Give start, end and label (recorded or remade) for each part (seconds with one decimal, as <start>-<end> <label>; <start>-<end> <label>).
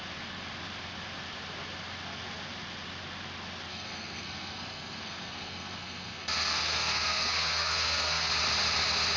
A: 0.0-3.7 recorded; 3.7-8.3 remade; 8.3-9.2 recorded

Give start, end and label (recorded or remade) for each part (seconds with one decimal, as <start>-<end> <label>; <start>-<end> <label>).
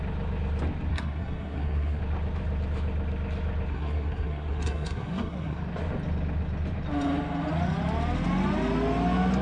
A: 0.0-0.9 recorded; 0.9-2.0 remade; 2.0-3.7 recorded; 3.7-5.6 remade; 5.6-9.4 recorded